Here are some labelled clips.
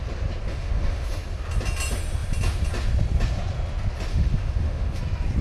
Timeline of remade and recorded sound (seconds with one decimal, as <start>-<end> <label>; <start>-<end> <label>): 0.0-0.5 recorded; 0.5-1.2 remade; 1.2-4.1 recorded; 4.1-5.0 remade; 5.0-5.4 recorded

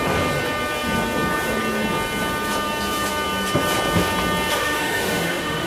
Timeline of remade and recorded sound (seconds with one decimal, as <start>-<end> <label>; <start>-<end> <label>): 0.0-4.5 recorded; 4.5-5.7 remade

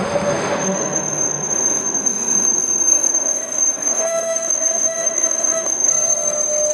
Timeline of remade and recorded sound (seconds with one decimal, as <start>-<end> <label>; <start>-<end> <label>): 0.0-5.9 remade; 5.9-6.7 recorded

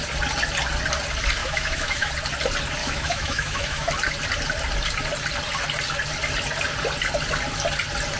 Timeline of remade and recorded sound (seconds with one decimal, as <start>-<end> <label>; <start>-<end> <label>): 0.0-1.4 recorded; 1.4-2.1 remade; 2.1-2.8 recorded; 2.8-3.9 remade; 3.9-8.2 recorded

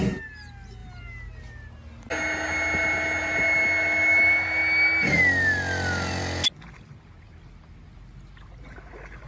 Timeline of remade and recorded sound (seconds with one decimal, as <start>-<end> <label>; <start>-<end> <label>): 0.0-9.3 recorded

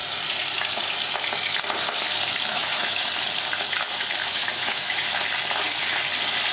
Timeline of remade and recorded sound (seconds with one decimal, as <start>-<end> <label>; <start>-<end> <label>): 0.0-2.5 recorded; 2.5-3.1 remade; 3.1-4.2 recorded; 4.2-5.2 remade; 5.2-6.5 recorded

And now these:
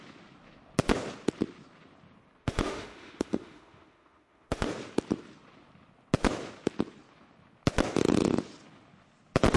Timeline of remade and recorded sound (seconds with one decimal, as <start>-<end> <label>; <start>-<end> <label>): 0.0-2.4 recorded; 2.4-4.7 remade; 4.7-9.6 recorded